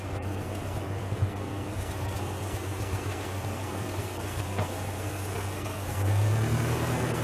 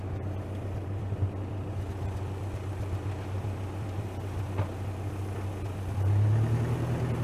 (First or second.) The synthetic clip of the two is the first